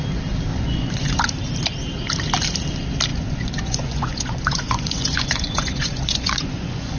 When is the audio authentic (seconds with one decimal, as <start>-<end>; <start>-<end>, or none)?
0.0-0.5; 1.2-3.1